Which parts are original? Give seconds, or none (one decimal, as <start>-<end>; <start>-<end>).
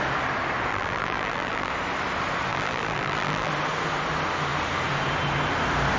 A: 0.0-0.7; 1.7-2.5; 3.5-6.0